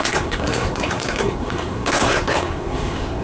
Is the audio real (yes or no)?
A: no